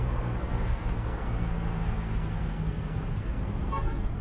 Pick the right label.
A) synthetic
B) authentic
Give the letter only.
A